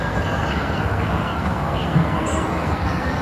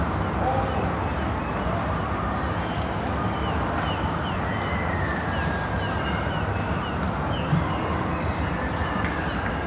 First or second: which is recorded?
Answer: second